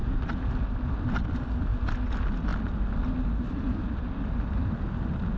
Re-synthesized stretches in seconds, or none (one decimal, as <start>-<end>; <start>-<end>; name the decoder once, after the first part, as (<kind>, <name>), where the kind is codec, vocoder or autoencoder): none